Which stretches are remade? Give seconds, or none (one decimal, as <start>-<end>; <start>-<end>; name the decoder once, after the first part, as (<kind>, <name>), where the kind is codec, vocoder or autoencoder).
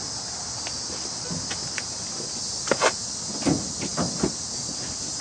none